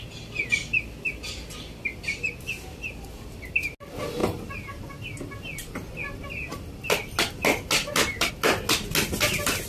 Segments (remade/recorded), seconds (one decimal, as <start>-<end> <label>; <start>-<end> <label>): 0.0-9.7 recorded